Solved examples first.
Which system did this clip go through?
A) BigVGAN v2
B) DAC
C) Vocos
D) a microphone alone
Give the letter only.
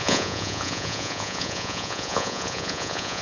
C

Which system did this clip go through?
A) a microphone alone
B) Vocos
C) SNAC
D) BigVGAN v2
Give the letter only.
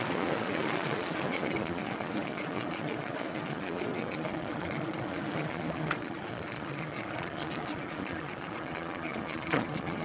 B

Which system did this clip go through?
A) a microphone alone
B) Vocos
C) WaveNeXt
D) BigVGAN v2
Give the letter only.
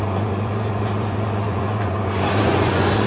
B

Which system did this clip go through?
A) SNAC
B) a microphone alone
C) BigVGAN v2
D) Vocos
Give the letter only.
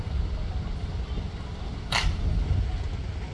B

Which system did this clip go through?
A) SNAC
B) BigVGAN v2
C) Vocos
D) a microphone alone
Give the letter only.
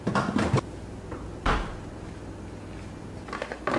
D